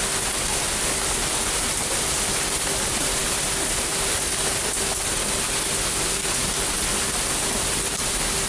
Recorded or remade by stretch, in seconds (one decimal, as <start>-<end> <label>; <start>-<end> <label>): 0.0-8.5 recorded